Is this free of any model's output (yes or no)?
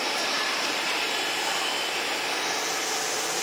yes